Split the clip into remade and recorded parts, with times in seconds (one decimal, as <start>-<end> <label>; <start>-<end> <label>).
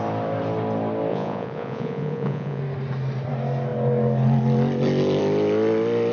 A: 0.0-1.1 recorded; 1.1-2.6 remade; 2.6-6.1 recorded